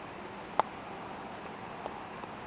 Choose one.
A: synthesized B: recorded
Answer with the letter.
B